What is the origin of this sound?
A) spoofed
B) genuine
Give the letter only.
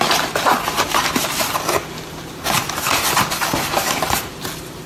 B